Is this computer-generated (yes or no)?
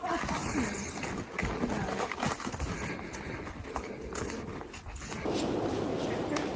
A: no